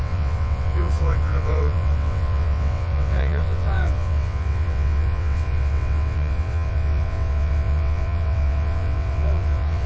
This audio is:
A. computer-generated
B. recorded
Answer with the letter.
A